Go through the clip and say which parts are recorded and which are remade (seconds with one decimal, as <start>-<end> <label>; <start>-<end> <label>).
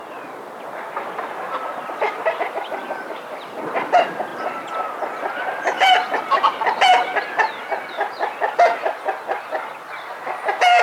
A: 0.0-4.3 recorded; 4.3-7.2 remade; 7.2-10.8 recorded